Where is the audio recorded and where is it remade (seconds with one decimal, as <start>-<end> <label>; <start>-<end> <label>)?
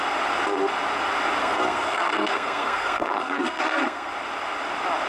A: 0.0-1.4 recorded; 1.4-4.1 remade; 4.1-5.1 recorded